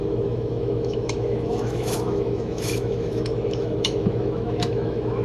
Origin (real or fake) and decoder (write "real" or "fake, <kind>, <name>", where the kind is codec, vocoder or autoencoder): fake, autoencoder, DAC-VAE